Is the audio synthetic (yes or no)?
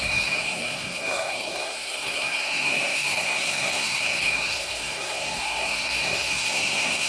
yes